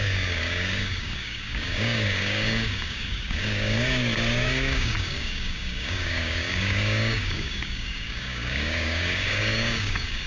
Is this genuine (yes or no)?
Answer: no